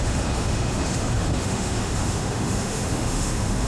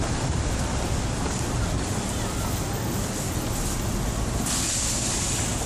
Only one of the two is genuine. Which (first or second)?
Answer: second